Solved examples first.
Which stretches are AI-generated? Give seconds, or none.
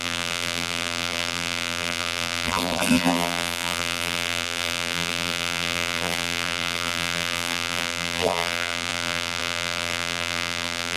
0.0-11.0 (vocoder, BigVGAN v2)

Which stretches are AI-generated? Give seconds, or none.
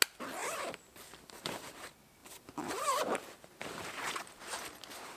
2.2-4.1 (vocoder, BigVGAN v2)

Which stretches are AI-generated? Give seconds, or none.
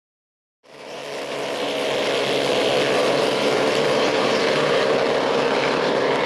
0.0-1.0 (vocoder, BigVGAN v2); 3.1-6.3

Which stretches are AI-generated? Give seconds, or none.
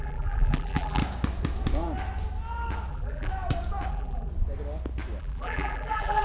0.0-1.0 (vocoder, BigVGAN v2); 2.9-3.3; 3.9-4.3; 5.2-6.2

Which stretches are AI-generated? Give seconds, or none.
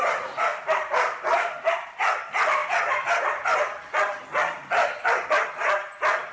none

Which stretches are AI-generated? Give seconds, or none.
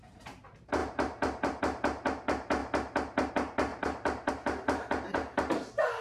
0.0-2.6 (vocoder, BigVGAN v2); 3.3-6.0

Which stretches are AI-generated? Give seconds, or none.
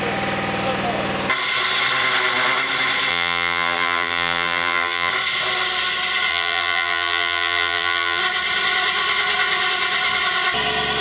3.1-5.1 (vocoder, BigVGAN v2); 6.3-8.2